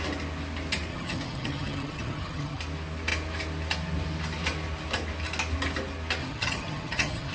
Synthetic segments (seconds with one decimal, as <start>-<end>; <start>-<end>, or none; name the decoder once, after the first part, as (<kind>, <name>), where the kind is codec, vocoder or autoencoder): 0.9-2.6 (vocoder, HiFi-GAN); 6.2-7.3

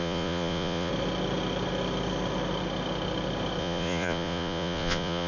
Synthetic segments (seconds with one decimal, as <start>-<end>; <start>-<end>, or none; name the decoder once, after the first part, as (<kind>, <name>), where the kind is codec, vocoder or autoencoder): 0.0-0.9 (vocoder, Vocos); 3.6-5.3